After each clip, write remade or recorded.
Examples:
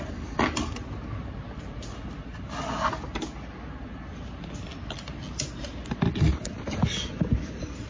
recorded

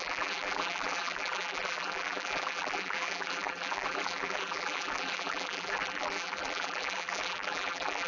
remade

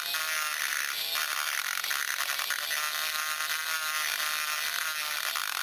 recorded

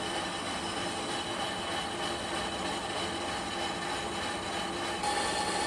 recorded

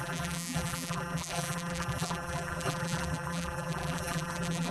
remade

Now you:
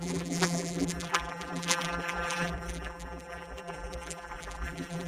remade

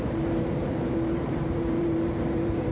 remade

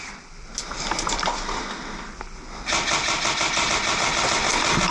recorded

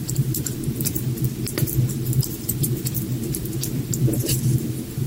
remade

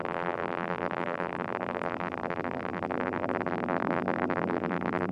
remade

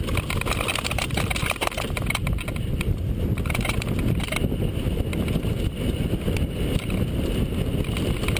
recorded